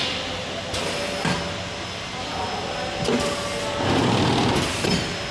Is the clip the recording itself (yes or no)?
yes